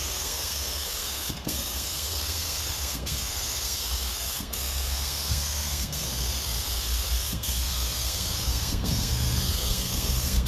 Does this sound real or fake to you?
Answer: fake